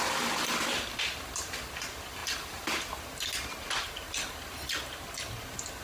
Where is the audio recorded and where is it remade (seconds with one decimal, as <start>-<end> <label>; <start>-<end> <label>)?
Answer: 0.0-5.8 recorded